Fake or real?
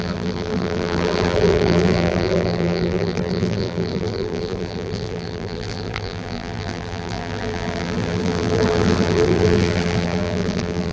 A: fake